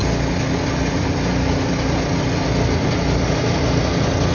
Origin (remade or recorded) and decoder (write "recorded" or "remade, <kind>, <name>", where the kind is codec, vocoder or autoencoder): recorded